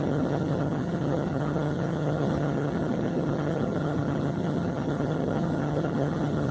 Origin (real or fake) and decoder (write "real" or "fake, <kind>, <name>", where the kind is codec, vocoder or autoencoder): fake, vocoder, HiFi-GAN